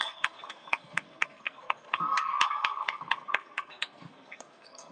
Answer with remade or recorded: remade